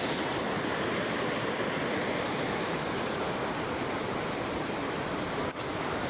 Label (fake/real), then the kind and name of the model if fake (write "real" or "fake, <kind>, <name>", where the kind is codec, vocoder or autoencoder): real